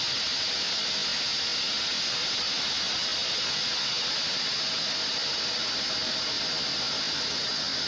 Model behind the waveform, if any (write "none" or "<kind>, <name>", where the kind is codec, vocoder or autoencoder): none